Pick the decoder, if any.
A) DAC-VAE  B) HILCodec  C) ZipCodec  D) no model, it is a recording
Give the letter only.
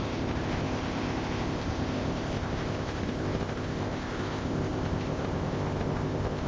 C